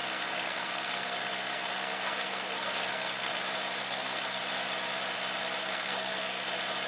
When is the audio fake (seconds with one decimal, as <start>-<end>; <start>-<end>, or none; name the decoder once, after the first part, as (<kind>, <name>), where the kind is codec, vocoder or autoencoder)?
0.0-3.3 (codec, SNAC); 3.8-4.4; 5.6-6.5